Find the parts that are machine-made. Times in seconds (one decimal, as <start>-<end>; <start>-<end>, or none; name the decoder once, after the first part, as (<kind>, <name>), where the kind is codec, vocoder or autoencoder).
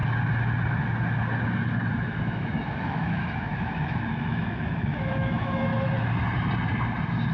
1.9-5.7 (autoencoder, DAC-VAE)